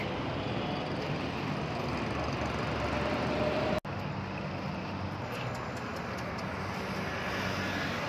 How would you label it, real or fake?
real